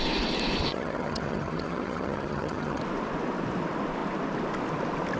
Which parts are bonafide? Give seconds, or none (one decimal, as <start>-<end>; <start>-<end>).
0.0-0.7; 2.8-5.2